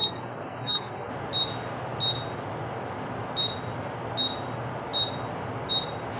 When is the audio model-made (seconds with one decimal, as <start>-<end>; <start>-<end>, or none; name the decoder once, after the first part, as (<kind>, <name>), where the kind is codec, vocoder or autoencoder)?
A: 0.0-1.1 (codec, SNAC)